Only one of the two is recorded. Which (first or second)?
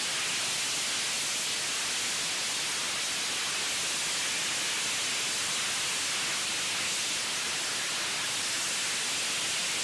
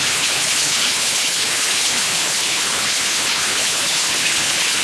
first